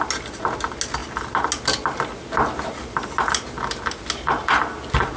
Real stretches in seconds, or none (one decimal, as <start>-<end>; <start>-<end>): 0.0-5.2